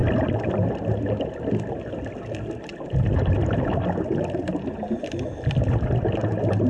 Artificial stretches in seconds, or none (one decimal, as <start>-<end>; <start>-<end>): none